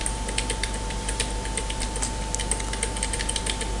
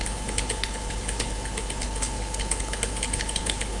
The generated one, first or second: second